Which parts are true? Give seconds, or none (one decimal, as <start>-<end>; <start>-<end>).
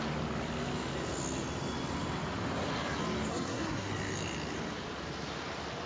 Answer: 0.0-3.3; 3.9-5.9